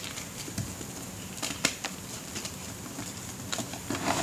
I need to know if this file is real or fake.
fake